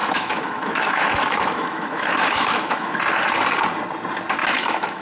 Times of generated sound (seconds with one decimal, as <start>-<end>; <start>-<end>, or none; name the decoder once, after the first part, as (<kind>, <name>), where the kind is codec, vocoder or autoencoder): 0.0-3.0 (autoencoder, DAC-VAE); 4.4-5.0